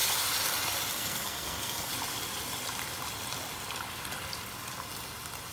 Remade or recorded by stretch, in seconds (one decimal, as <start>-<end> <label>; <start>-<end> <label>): 0.0-0.9 recorded; 0.9-1.9 remade; 1.9-5.5 recorded